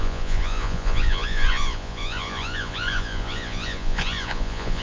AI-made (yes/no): yes